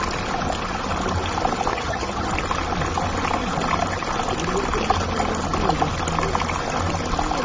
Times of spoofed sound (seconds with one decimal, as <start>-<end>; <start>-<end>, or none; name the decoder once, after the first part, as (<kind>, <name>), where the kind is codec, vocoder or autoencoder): 1.7-2.3 (vocoder, HiFi-GAN)